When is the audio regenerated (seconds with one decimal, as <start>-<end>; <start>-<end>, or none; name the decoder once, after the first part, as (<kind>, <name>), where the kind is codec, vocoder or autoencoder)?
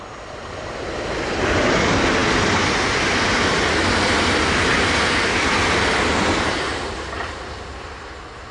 none